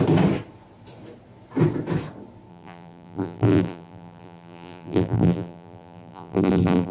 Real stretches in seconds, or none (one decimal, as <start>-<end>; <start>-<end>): 0.0-2.5